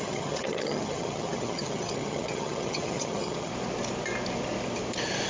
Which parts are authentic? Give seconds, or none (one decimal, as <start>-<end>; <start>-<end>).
3.5-5.3